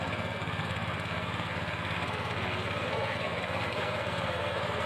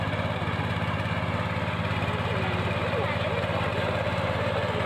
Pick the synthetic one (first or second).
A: first